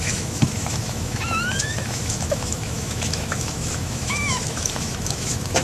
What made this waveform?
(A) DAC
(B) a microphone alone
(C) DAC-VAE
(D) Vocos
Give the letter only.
C